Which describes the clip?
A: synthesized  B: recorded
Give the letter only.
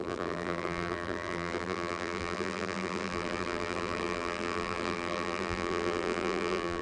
A